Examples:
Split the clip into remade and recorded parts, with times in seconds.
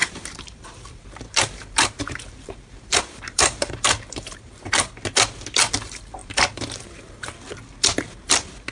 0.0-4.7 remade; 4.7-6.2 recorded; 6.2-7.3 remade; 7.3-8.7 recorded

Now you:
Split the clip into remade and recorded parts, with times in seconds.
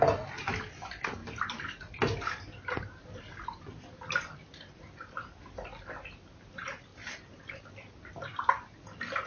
0.0-9.3 recorded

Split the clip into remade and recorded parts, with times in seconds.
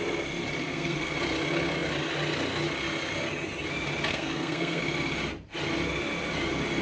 0.0-0.6 recorded; 0.6-1.1 remade; 1.1-4.1 recorded; 4.1-4.8 remade; 4.8-6.8 recorded